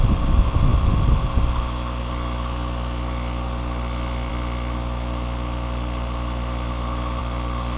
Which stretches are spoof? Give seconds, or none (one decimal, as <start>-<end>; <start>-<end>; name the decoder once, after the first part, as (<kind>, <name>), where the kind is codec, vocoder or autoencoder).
none